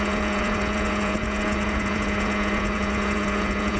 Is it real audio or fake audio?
fake